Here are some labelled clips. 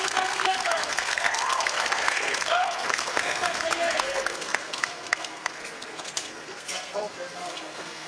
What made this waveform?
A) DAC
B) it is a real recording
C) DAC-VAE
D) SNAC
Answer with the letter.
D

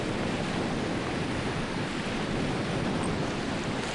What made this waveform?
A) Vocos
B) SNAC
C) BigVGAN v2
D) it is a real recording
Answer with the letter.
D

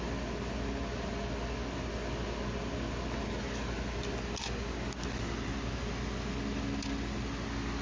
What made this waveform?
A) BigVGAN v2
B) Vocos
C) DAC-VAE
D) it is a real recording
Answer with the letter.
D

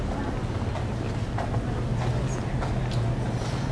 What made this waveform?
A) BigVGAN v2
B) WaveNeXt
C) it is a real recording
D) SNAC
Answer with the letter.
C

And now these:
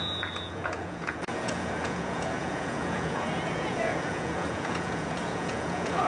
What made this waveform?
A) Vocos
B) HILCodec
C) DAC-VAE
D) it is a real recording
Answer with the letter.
A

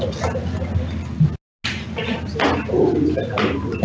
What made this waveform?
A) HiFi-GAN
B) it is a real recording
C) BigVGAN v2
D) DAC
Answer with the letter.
B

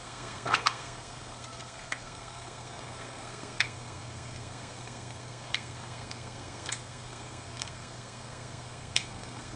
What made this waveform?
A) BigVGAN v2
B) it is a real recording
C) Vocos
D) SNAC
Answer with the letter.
D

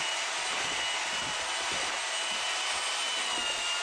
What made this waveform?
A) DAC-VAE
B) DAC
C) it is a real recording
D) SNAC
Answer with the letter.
C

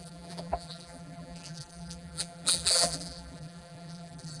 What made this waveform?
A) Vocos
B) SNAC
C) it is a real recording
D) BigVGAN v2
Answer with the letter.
D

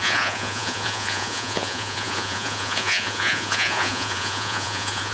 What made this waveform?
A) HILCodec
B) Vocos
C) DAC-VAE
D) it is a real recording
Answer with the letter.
B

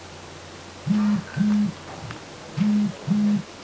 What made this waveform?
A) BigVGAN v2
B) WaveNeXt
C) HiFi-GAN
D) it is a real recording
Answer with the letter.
D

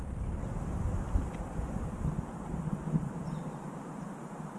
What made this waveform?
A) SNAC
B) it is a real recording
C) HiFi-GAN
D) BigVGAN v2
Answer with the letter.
D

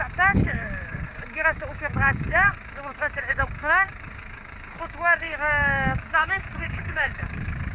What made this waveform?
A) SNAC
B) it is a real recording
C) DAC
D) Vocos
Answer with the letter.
C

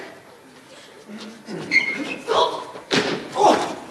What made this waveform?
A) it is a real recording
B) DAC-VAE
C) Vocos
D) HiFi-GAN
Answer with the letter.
A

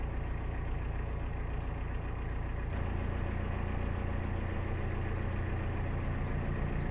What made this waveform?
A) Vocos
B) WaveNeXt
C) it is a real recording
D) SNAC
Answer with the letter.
C